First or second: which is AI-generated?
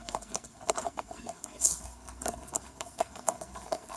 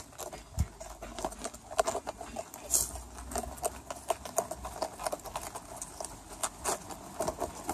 first